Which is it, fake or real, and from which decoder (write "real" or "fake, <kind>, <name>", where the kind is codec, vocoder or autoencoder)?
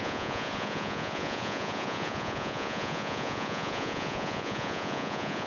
fake, vocoder, Vocos